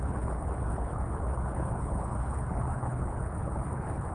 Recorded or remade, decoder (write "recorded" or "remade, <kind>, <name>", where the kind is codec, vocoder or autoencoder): remade, codec, HILCodec